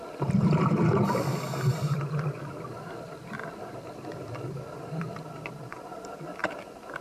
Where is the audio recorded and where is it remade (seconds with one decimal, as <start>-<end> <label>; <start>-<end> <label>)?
0.0-6.4 remade; 6.4-7.0 recorded